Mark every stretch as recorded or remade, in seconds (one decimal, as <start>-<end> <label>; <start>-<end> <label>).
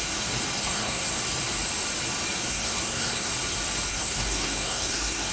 0.0-0.6 recorded; 0.6-1.2 remade; 1.2-2.5 recorded; 2.5-3.3 remade; 3.3-3.9 recorded; 3.9-5.3 remade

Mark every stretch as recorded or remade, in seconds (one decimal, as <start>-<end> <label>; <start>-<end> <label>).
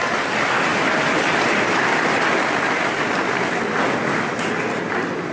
0.0-5.3 recorded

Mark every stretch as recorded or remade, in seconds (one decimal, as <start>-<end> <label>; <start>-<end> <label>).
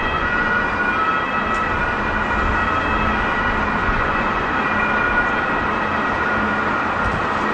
0.0-0.7 remade; 0.7-3.8 recorded; 3.8-4.5 remade; 4.5-7.5 recorded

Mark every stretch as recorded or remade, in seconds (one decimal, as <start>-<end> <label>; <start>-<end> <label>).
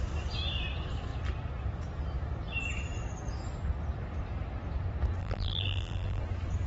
0.0-5.2 recorded; 5.2-6.2 remade; 6.2-6.7 recorded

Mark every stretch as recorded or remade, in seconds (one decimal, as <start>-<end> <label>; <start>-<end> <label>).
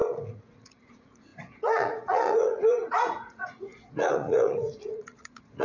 0.0-5.6 remade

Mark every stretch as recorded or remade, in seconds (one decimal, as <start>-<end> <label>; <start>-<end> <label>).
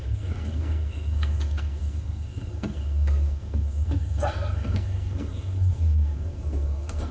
0.0-7.1 remade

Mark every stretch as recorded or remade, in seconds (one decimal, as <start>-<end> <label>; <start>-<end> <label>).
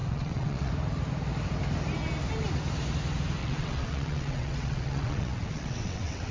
0.0-0.7 remade; 0.7-3.4 recorded; 3.4-6.3 remade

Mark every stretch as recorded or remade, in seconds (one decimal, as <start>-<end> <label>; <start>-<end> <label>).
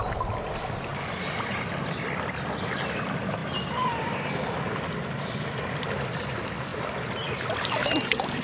0.0-8.4 recorded